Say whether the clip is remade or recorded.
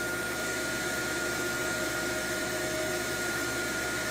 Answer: remade